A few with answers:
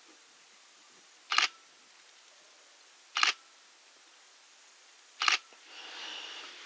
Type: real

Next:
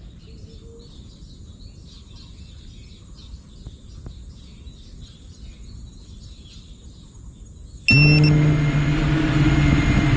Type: real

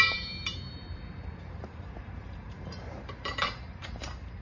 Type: fake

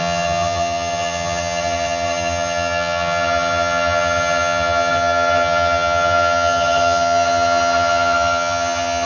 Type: fake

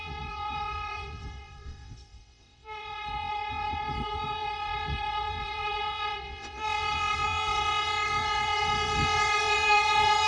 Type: fake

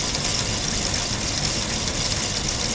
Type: real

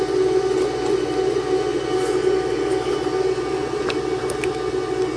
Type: real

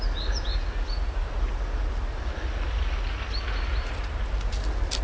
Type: real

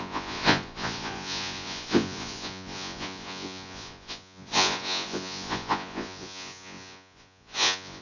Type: fake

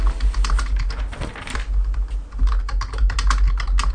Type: real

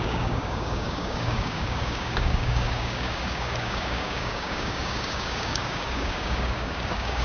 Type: fake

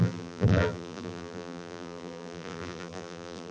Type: fake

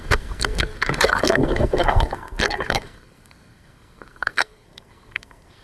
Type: fake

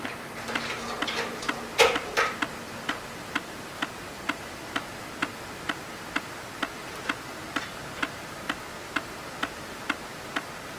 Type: real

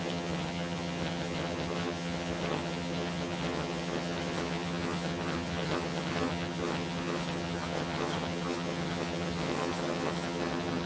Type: fake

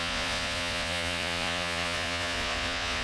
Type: fake